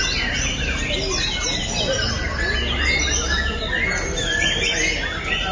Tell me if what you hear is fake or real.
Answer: real